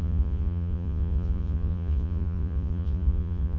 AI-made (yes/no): yes